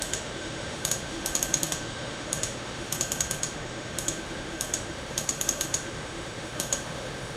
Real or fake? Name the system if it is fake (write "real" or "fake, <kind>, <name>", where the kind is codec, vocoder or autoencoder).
fake, autoencoder, DAC-VAE